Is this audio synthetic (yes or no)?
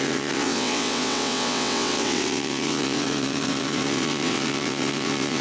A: yes